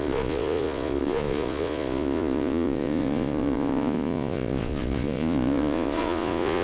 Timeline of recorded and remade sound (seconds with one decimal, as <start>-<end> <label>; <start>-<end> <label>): 0.0-6.6 remade